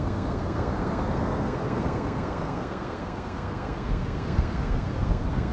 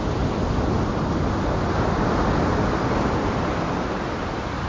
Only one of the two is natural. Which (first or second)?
second